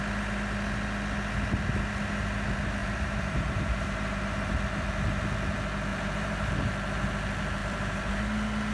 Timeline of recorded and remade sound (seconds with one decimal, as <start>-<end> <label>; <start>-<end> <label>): 0.0-2.8 recorded; 2.8-4.2 remade; 4.2-5.9 recorded; 5.9-6.5 remade; 6.5-7.6 recorded; 7.6-8.2 remade; 8.2-8.7 recorded